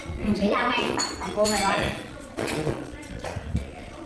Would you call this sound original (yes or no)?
no